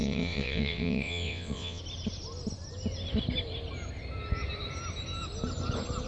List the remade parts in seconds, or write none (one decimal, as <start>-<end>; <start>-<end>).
0.0-1.8

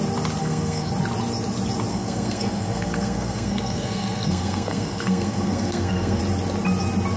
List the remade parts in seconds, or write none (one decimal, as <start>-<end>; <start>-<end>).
0.4-0.9; 1.9-6.2

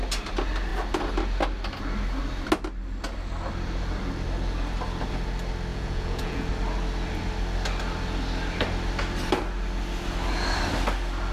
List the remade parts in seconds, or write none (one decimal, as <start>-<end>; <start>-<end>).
5.7-6.5

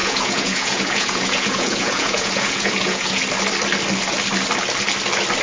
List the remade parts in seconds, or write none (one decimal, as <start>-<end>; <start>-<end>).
0.0-3.2

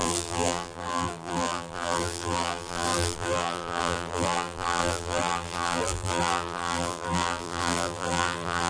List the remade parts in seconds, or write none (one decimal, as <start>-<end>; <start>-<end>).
0.0-8.7

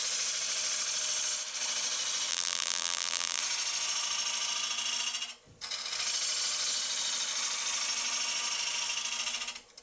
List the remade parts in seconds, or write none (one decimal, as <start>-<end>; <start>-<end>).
2.3-3.4